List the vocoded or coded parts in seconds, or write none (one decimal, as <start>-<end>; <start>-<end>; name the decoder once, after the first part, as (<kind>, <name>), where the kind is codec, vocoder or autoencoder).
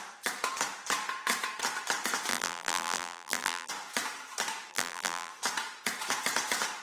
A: 2.3-3.7 (vocoder, BigVGAN v2); 4.7-5.3